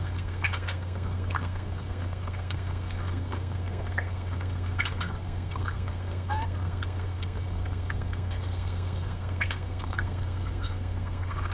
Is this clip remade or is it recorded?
remade